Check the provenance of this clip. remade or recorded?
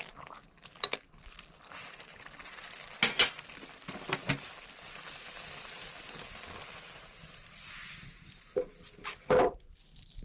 recorded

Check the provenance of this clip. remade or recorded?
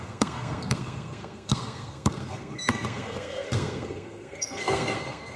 remade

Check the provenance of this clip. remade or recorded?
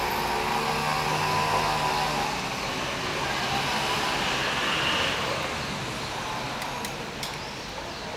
recorded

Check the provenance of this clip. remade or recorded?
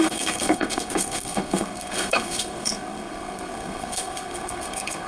remade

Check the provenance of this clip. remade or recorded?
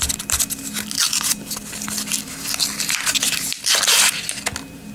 recorded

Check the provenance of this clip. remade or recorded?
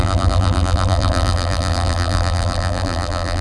remade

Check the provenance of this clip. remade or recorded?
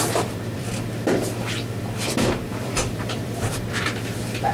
remade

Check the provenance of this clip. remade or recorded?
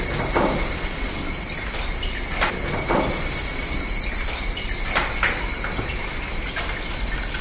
recorded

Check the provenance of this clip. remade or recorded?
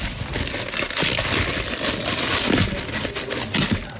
recorded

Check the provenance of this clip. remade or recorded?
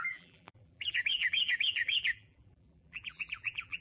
remade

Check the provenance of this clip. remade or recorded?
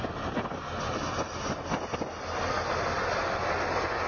recorded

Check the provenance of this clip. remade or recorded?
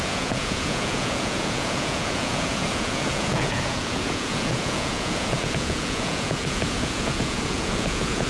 remade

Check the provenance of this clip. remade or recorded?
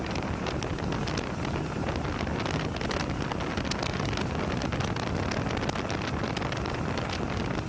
recorded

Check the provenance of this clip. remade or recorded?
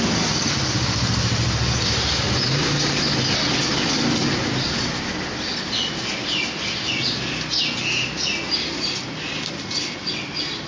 recorded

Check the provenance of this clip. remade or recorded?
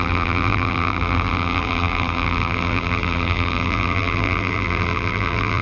remade